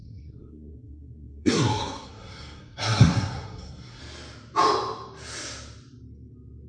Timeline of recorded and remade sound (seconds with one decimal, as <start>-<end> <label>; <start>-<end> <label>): 0.0-4.0 remade; 4.0-6.7 recorded